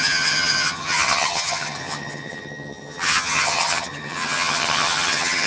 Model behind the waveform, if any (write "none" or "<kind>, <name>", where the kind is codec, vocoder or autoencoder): vocoder, HiFi-GAN